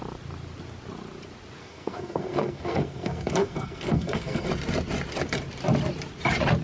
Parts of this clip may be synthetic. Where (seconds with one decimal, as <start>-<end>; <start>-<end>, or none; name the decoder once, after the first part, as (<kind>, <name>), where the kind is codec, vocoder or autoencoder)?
1.6-4.5 (codec, SNAC)